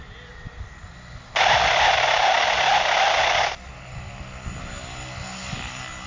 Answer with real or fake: real